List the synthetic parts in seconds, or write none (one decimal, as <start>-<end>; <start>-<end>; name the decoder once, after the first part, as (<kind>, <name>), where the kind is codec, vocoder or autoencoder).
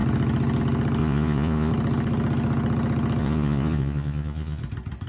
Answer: 1.0-1.7 (vocoder, Vocos); 3.2-4.6